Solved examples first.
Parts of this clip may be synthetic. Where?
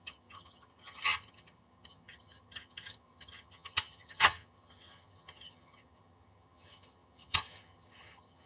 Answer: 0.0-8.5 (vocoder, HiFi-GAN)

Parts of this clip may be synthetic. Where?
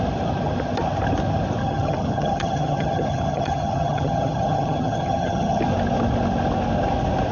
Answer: 1.6-5.6 (vocoder, HiFi-GAN)